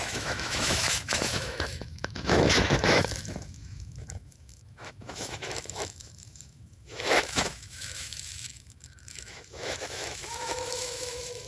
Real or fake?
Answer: fake